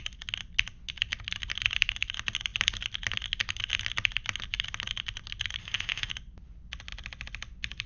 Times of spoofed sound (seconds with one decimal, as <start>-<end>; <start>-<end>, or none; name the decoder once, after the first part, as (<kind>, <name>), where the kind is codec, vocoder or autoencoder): 5.6-6.1 (codec, ZipCodec)